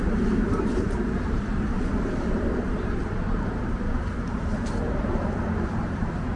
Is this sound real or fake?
fake